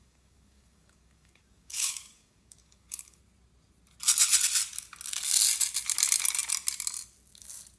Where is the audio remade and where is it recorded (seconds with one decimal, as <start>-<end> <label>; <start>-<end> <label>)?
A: 0.0-3.2 remade; 3.2-7.8 recorded